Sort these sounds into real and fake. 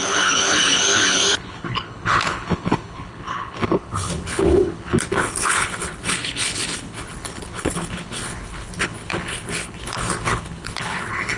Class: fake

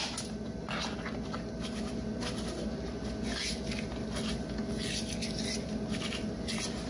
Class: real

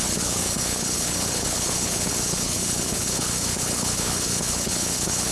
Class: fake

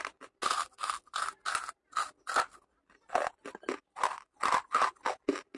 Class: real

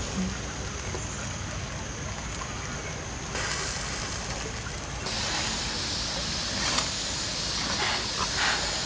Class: real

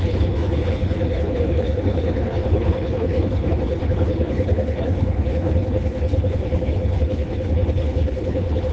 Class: fake